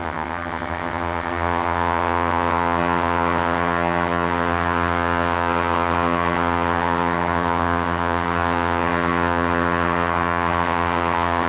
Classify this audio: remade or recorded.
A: remade